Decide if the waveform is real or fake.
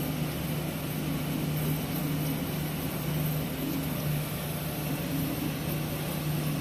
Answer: real